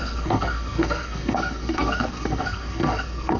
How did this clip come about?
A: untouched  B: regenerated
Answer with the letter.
B